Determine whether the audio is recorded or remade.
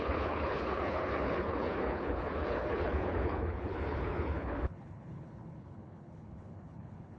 remade